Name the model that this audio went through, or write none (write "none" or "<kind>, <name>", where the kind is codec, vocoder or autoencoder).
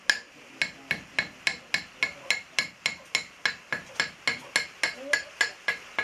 none